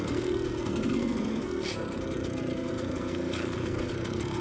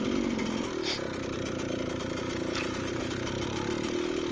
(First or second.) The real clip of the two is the second